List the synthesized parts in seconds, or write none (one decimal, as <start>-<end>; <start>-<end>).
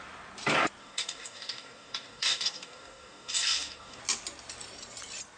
0.8-4.0